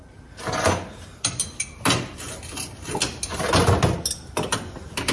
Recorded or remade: recorded